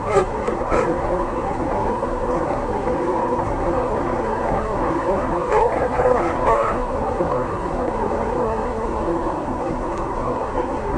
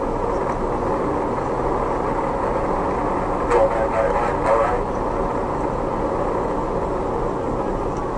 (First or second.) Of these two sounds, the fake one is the first